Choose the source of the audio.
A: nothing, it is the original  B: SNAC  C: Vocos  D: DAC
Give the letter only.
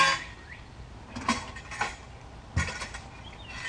A